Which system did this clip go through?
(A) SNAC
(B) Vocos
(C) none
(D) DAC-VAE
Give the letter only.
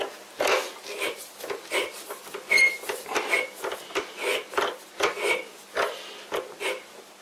C